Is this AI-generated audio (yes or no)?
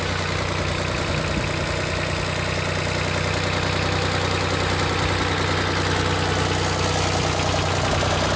no